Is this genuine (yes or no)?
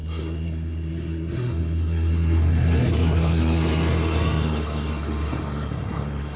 no